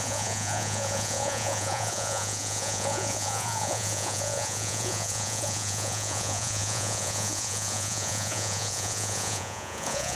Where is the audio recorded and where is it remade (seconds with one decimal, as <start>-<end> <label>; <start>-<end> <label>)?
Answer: 0.0-10.1 remade